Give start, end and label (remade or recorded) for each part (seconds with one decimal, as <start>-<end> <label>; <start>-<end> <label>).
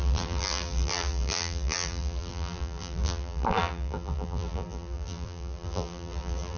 0.0-6.6 remade